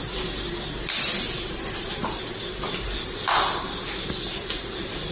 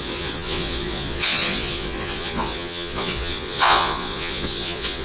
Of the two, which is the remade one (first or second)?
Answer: second